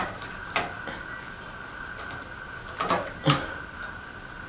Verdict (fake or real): real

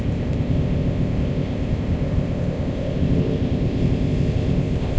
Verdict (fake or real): fake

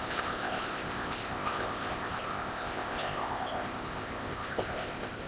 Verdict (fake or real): fake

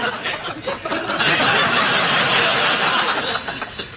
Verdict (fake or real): real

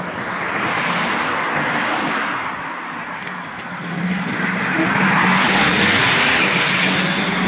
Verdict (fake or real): real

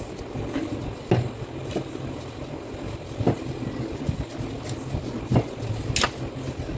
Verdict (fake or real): real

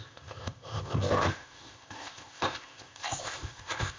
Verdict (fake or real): fake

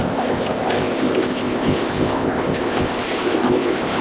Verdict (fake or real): fake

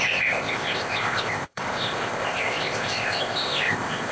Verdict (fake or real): fake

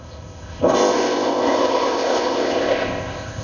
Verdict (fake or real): fake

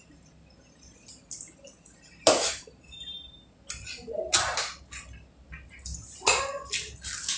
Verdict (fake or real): real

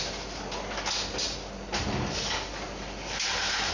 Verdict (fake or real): real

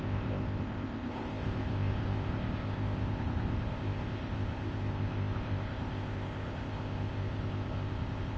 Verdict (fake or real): fake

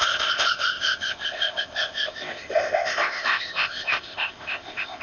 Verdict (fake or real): fake